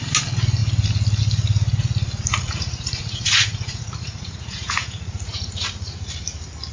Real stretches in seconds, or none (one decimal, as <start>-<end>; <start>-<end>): 0.0-2.3; 6.1-6.7